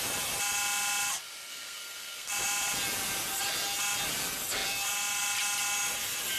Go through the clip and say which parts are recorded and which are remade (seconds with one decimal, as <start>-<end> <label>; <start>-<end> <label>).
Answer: 0.0-1.5 recorded; 1.5-2.3 remade; 2.3-6.4 recorded